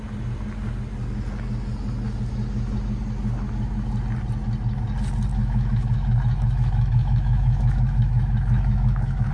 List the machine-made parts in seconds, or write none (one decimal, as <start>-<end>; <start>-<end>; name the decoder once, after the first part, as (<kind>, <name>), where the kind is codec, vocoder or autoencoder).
5.3-9.3 (autoencoder, DAC-VAE)